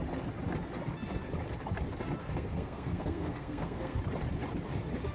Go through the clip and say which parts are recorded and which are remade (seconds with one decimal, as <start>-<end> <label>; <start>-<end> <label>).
0.0-2.2 recorded; 2.2-4.0 remade; 4.0-5.1 recorded